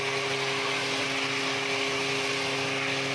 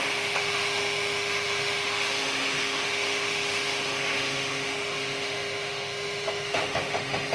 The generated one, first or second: second